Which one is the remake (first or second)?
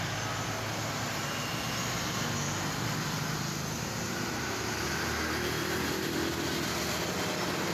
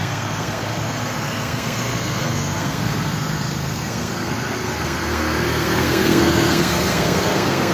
second